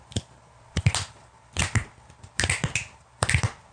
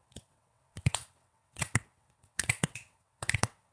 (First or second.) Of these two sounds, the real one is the first